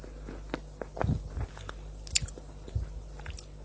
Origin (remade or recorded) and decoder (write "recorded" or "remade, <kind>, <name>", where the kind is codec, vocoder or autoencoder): recorded